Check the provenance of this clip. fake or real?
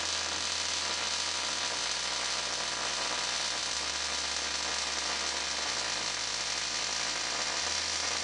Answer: real